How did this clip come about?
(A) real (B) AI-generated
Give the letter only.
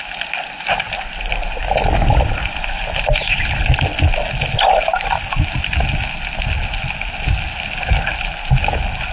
A